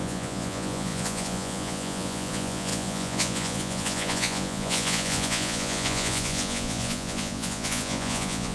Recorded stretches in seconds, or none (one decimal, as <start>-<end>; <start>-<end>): none